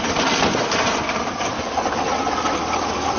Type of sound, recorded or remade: recorded